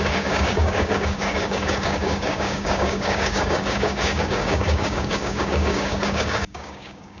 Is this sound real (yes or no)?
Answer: no